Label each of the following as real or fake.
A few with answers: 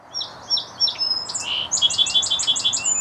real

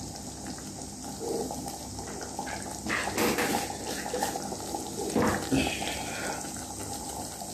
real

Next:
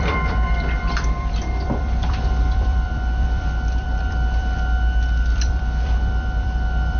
fake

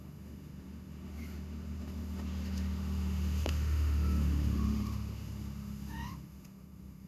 fake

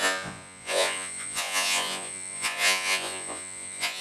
fake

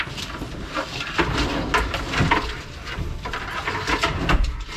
real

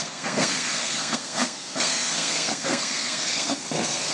fake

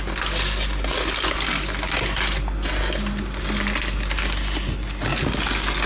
real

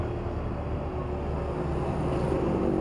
real